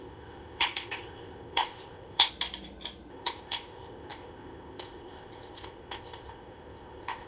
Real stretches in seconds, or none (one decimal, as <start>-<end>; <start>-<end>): 2.3-3.1